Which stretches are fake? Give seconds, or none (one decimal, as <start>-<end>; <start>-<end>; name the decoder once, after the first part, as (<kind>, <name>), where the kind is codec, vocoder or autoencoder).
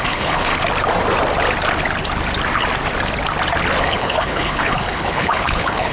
0.0-0.5 (codec, HILCodec); 3.8-5.9